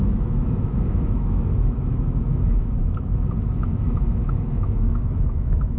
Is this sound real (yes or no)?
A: no